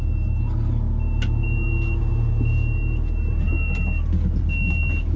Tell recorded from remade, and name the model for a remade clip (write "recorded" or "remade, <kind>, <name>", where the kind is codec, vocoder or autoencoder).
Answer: recorded